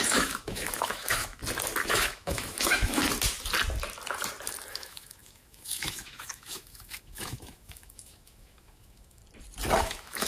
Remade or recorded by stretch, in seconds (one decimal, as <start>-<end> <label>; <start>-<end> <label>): 0.0-1.4 remade; 1.4-1.9 recorded; 1.9-3.0 remade; 3.0-4.7 recorded; 4.7-9.2 remade; 9.2-9.8 recorded; 9.8-10.3 remade

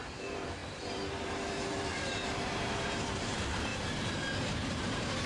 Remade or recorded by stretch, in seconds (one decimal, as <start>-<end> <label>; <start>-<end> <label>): 0.0-5.3 remade

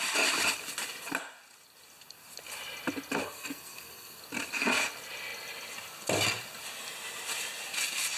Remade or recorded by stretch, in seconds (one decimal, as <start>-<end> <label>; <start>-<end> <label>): 0.0-3.2 recorded; 3.2-4.2 remade; 4.2-8.2 recorded

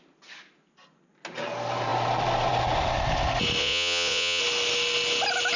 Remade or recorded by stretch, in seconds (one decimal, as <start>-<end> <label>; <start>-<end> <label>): 0.0-3.6 recorded; 3.6-4.4 remade; 4.4-5.6 recorded

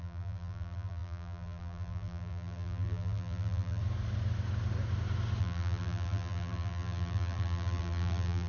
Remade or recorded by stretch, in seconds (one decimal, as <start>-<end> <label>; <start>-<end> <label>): 0.0-3.8 remade; 3.8-5.4 recorded; 5.4-8.5 remade

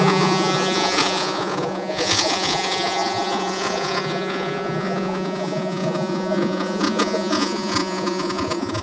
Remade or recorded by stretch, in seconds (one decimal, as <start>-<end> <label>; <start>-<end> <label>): 0.0-8.8 remade